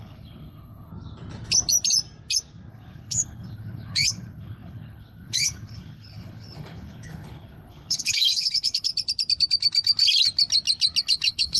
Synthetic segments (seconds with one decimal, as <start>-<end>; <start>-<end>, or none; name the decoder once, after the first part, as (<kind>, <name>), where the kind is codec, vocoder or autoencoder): 0.0-0.9 (codec, HILCodec); 2.7-8.9; 11.0-11.6